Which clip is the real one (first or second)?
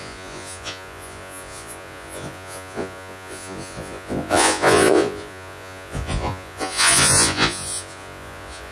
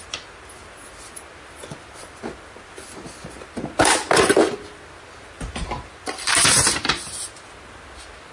second